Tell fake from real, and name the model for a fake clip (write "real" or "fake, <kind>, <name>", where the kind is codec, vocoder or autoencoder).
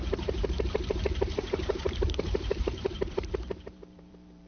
fake, vocoder, BigVGAN v2